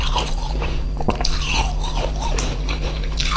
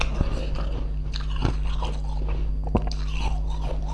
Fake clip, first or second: first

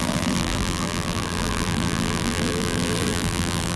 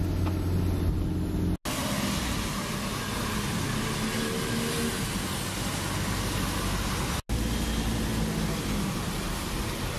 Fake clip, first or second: first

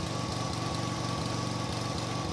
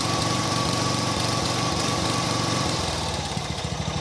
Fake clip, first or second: second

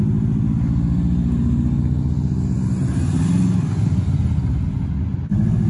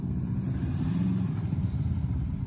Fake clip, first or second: second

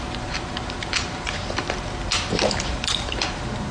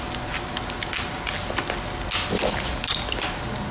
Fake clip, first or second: first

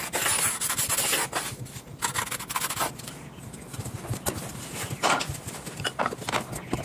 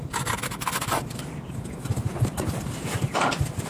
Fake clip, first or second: second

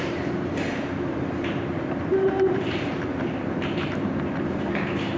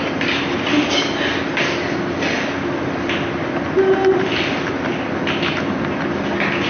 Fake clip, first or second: first